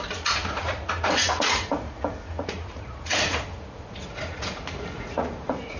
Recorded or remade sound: remade